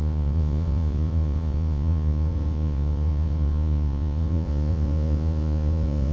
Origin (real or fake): fake